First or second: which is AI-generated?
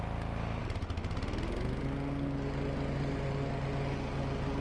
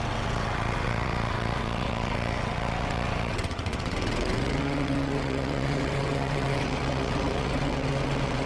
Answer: second